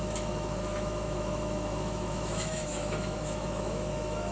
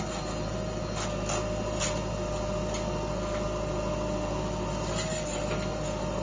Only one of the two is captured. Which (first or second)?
second